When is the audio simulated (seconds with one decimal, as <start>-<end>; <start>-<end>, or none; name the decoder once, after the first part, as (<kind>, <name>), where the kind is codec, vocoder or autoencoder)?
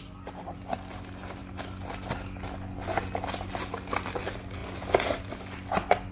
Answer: none